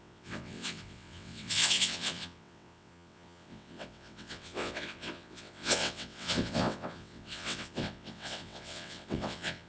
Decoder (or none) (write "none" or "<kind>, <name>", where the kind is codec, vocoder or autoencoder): vocoder, WaveNeXt